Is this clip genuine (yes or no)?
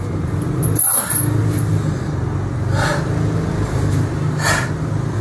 yes